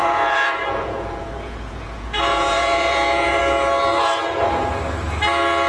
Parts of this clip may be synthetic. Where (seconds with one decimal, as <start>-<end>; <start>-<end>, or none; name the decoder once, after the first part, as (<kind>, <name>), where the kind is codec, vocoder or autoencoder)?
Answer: 0.0-3.4 (vocoder, Vocos); 3.9-4.7